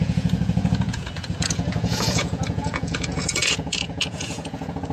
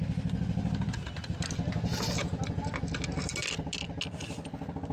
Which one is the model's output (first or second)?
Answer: first